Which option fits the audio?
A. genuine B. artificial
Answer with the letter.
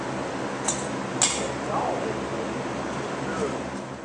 A